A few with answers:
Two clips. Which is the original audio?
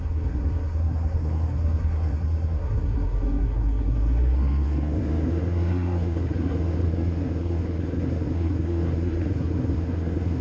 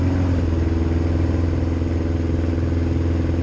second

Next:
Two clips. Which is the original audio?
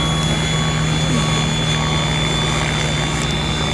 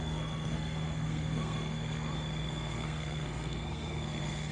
first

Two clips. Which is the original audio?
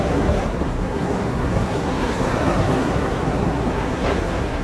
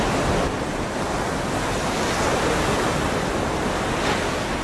second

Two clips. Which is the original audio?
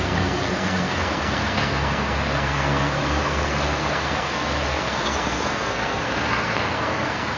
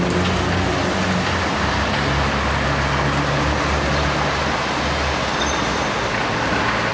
second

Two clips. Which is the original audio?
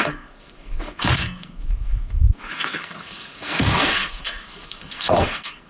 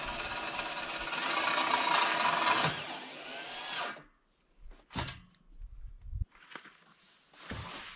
second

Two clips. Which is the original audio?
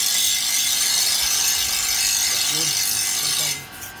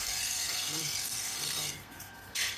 first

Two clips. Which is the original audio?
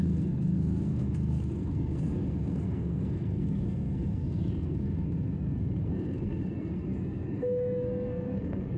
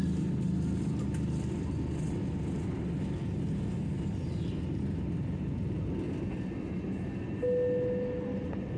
second